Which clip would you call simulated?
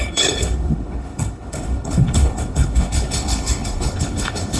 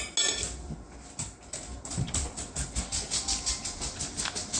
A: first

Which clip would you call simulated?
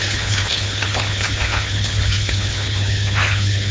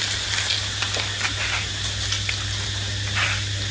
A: first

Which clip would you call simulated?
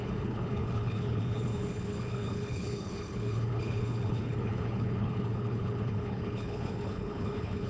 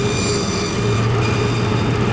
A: first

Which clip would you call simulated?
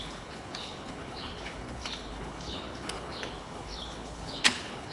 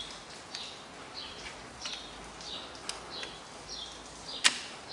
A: first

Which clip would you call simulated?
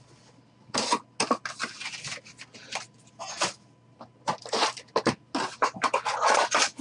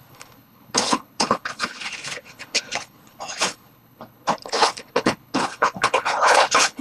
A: second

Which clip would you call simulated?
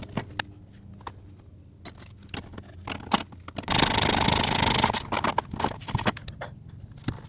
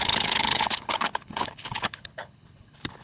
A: second